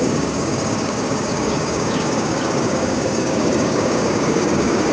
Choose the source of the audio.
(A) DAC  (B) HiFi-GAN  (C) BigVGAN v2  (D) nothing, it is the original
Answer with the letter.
A